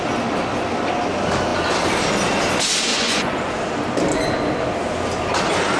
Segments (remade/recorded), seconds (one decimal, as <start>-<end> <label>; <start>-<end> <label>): 0.0-2.9 recorded; 2.9-3.5 remade; 3.5-5.8 recorded